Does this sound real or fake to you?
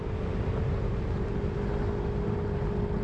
real